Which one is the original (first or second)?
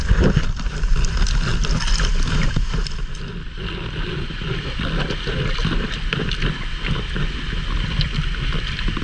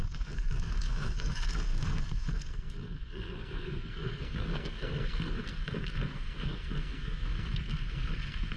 first